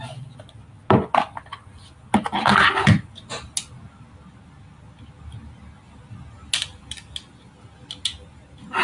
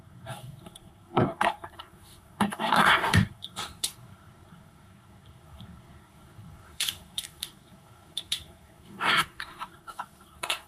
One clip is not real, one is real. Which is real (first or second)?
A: first